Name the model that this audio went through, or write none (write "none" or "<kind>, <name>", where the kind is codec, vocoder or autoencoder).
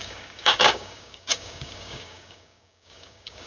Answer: codec, DAC